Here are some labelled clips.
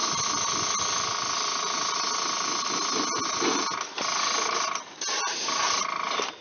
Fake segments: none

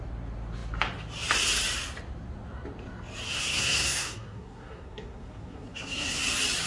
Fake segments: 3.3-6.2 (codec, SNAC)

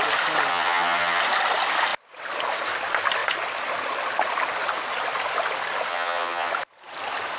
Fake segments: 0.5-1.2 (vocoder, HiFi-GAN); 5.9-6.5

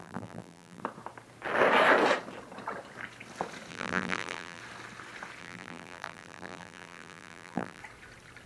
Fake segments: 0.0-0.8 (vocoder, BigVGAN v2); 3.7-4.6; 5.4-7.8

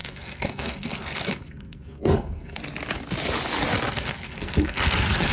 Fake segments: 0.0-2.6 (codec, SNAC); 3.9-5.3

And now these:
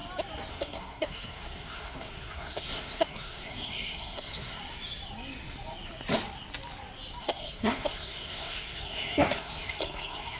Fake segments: 0.5-4.6 (codec, SNAC); 7.2-10.4

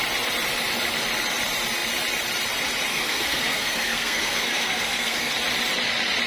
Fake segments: 2.9-5.3 (codec, SNAC)